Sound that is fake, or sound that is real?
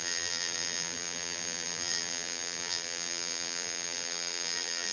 fake